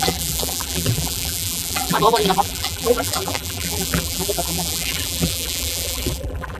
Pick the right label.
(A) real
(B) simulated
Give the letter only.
B